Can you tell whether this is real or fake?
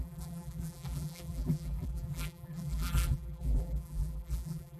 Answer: fake